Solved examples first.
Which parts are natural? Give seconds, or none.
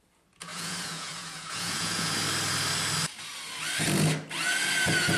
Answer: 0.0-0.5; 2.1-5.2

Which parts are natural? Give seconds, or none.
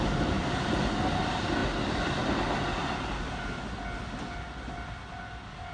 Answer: 0.0-5.7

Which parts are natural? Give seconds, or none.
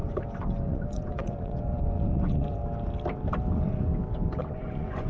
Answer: 2.6-3.5; 3.9-4.4